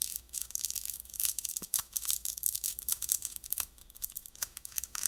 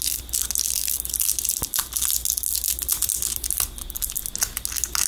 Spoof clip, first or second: first